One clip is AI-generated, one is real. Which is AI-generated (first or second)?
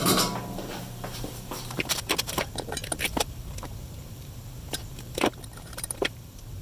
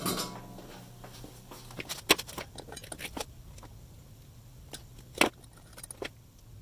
first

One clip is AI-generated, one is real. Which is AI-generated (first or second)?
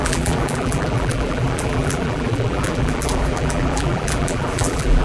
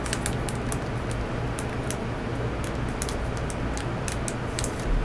first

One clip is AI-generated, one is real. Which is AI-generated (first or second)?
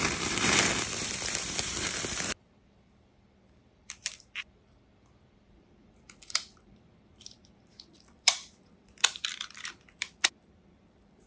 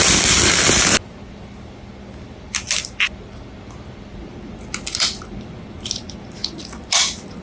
first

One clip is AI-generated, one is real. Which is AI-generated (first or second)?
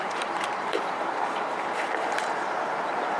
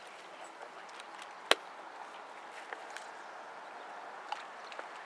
first